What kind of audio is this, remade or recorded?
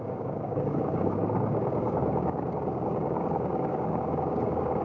remade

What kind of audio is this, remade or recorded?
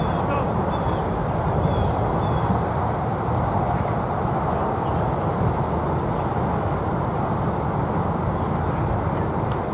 recorded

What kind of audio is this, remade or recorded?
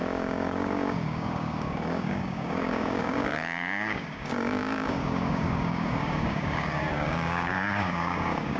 remade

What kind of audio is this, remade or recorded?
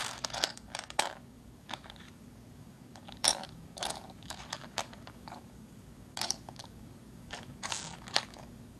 remade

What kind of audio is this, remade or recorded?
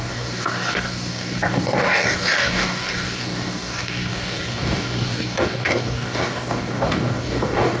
remade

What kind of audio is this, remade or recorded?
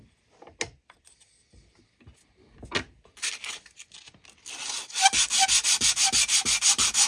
recorded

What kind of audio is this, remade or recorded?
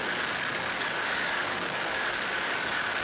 remade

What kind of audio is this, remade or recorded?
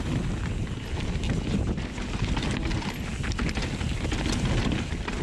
recorded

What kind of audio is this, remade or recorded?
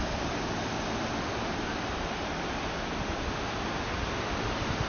recorded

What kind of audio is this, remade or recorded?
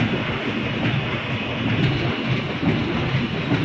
recorded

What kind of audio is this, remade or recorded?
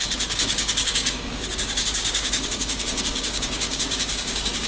remade